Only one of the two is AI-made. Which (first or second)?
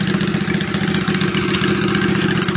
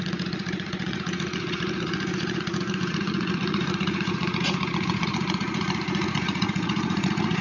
second